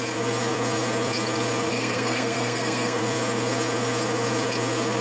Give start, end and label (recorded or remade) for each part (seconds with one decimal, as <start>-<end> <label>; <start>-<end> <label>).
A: 0.0-1.7 recorded; 1.7-3.0 remade; 3.0-5.0 recorded